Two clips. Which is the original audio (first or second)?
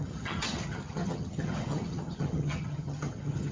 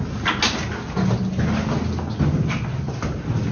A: second